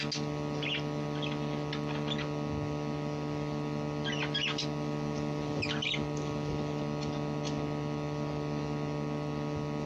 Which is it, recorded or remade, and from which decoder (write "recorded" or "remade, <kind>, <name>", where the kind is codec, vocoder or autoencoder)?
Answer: recorded